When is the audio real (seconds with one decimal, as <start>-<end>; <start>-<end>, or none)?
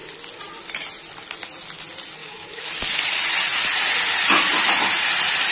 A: 0.0-2.2; 2.7-5.5